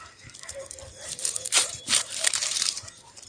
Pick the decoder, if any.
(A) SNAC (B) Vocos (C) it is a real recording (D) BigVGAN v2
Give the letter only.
D